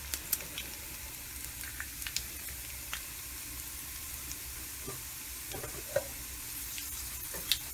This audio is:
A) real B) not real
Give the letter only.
A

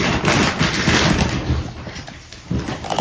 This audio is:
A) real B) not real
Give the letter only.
B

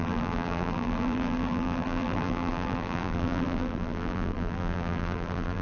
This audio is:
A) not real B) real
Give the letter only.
A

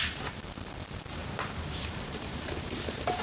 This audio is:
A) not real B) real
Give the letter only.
A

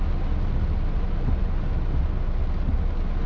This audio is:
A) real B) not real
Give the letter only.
A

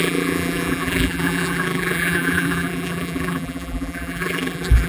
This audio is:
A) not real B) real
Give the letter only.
A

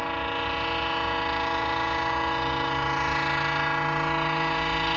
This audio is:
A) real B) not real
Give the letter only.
A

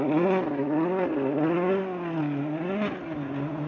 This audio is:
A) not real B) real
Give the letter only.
B